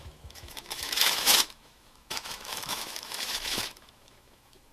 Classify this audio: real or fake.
fake